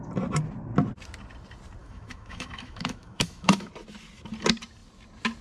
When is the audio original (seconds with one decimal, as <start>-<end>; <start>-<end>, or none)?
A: 0.0-1.8; 3.7-5.4